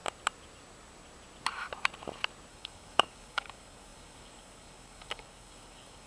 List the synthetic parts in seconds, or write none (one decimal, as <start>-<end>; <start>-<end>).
2.5-6.1